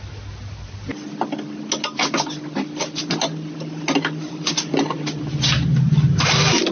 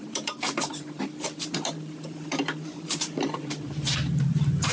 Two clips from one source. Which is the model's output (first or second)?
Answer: second